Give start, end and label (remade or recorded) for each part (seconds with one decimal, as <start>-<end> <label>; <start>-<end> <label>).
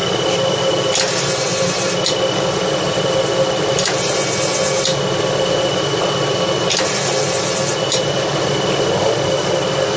0.0-10.0 recorded